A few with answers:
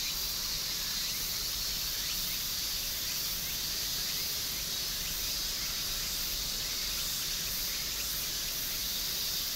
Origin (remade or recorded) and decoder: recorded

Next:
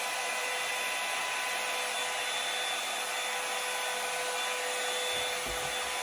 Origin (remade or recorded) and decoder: recorded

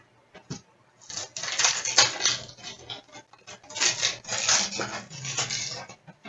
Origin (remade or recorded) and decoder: recorded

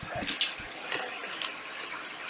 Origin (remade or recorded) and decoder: recorded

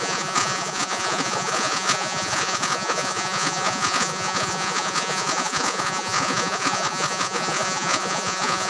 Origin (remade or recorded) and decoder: remade, vocoder, Vocos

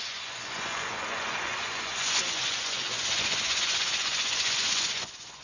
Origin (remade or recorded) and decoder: remade, vocoder, Vocos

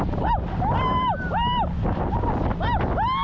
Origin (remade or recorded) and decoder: recorded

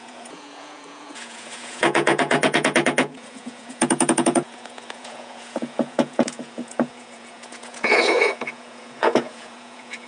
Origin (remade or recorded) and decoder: remade, vocoder, Vocos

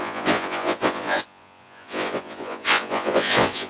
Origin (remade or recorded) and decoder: remade, vocoder, Vocos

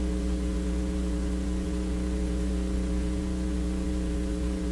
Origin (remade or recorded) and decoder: remade, vocoder, Vocos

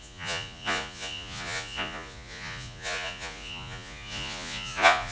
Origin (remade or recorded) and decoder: remade, vocoder, Vocos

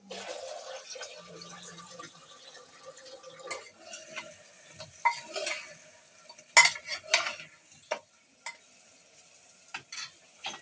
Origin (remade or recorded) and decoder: recorded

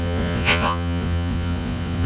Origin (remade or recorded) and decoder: remade, vocoder, Vocos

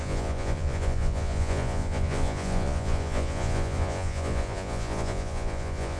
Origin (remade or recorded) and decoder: remade, vocoder, Vocos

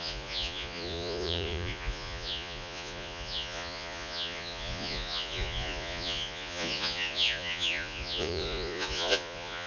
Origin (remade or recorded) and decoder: remade, vocoder, Vocos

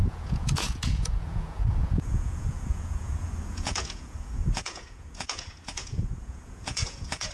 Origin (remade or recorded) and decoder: remade, vocoder, Vocos